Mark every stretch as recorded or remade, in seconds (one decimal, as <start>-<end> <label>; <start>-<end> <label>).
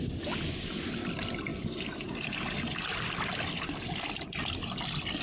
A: 0.0-5.2 recorded